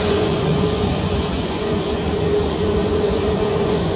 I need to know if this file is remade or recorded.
remade